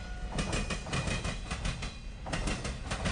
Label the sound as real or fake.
real